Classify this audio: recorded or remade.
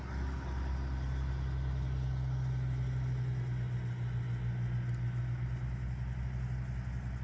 recorded